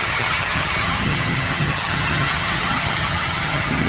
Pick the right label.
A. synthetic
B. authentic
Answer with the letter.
A